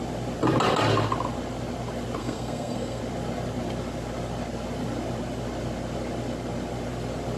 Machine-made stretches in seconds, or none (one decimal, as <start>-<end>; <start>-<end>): 2.2-3.0